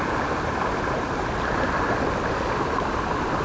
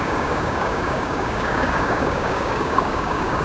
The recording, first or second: first